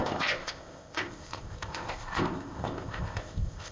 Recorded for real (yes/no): no